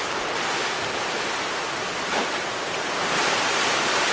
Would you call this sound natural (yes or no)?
yes